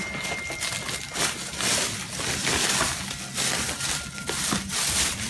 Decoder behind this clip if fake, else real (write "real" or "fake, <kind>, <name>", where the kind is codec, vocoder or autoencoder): real